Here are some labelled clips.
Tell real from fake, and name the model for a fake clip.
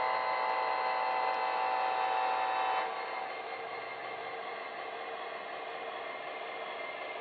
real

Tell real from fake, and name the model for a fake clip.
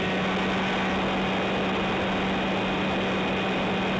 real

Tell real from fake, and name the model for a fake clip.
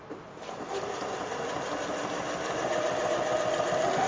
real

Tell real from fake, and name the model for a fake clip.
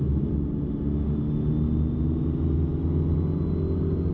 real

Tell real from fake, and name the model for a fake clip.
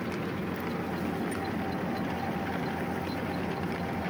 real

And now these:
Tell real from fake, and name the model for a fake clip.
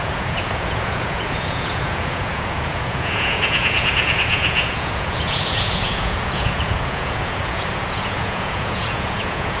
fake, vocoder, Vocos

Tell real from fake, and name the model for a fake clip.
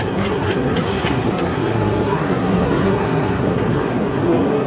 fake, codec, SNAC